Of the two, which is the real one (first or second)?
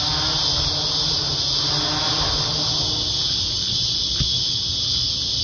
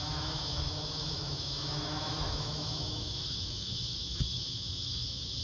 first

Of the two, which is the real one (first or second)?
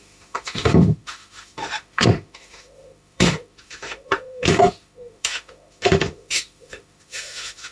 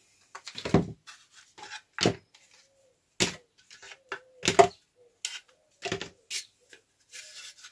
second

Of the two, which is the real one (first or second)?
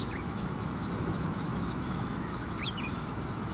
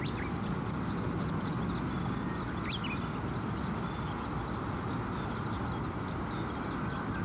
second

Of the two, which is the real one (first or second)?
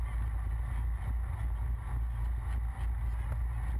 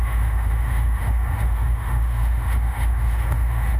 first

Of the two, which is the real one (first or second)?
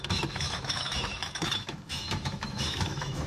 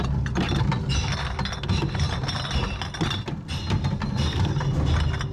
second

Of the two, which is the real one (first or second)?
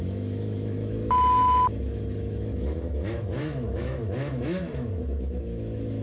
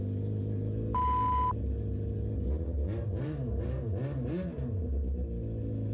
second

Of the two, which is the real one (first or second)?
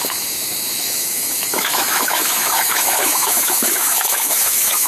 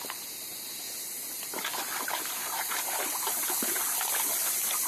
second